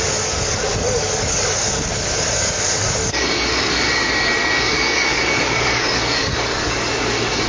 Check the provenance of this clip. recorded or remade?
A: remade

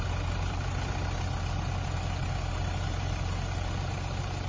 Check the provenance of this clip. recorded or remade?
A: recorded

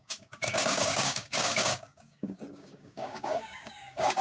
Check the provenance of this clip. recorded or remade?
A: remade